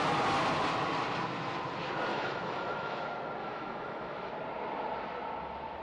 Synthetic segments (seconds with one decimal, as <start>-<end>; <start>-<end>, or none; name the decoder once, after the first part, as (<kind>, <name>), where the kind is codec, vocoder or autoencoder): 2.1-3.0 (autoencoder, DAC-VAE); 3.4-4.3